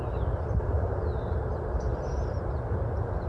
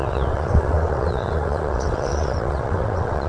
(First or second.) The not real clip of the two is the second